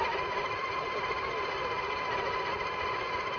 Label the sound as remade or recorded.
recorded